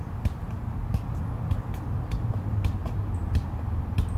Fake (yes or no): no